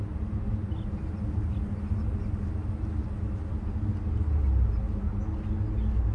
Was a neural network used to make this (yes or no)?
no